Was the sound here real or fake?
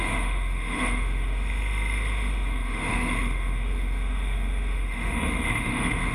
fake